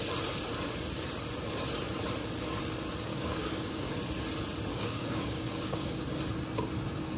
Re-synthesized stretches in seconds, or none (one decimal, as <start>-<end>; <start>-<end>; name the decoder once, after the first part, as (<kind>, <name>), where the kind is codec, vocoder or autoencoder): 3.1-3.9 (codec, DAC); 4.7-6.0

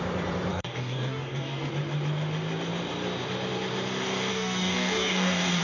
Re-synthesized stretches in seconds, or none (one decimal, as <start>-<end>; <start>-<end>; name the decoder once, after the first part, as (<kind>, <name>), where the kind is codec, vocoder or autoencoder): 0.5-1.7 (codec, DAC); 4.3-5.6

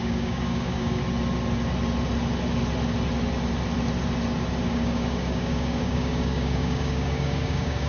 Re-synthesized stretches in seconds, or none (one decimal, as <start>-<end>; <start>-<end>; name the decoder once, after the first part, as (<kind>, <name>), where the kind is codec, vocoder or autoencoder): 0.0-1.0 (codec, DAC); 4.7-7.9

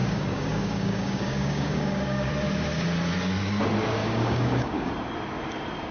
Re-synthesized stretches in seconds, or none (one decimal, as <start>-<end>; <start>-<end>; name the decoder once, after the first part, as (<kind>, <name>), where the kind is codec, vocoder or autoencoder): 0.0-2.3 (codec, DAC); 4.0-4.9

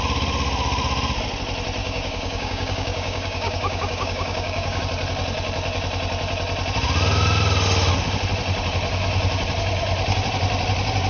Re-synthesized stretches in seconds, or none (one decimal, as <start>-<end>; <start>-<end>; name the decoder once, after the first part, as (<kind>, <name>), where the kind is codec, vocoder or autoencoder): 1.8-4.8 (codec, DAC)

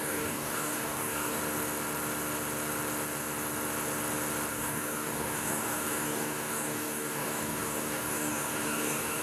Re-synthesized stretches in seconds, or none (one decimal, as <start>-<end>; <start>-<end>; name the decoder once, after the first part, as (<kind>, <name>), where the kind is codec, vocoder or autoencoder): 0.0-1.4 (codec, DAC); 4.5-9.2

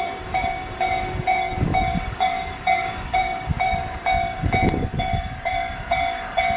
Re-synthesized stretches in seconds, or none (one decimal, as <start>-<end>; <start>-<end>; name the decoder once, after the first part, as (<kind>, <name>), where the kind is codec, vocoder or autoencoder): 0.0-6.6 (codec, DAC)

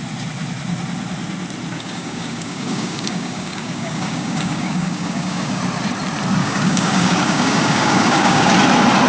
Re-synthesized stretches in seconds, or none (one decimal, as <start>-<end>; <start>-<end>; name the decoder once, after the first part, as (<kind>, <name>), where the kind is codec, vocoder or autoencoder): 1.7-5.6 (codec, DAC); 6.4-8.5